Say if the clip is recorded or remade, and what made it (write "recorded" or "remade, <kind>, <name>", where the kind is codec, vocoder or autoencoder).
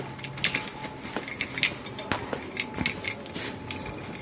recorded